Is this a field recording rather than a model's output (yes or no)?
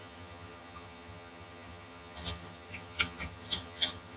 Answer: no